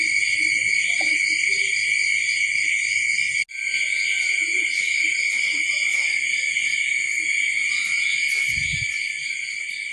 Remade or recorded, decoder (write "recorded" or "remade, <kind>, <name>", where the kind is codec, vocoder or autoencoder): recorded